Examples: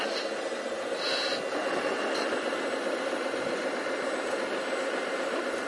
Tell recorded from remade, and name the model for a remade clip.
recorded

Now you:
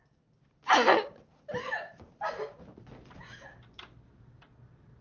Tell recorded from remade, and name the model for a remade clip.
recorded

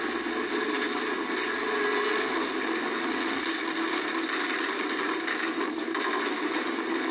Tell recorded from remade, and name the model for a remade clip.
recorded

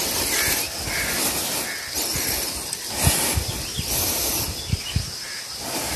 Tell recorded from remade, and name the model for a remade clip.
recorded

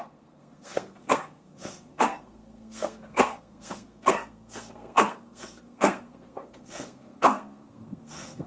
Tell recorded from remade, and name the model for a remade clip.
remade, codec, SNAC